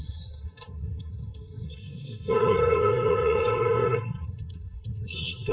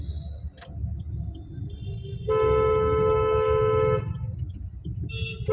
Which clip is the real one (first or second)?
second